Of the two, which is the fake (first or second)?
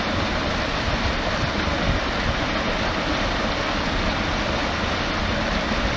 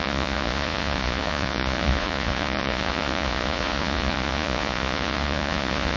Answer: second